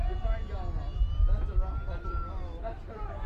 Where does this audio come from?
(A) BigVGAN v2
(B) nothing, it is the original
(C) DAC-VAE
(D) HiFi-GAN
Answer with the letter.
B